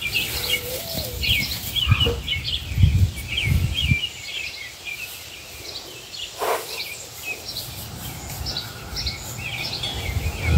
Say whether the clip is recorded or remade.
recorded